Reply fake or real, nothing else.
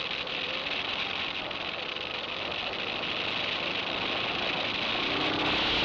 real